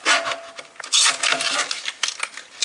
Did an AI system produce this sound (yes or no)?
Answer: no